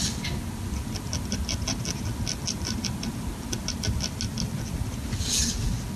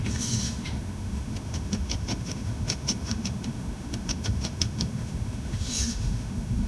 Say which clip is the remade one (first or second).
second